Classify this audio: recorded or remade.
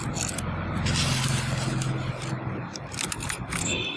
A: recorded